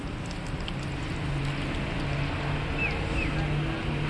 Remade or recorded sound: recorded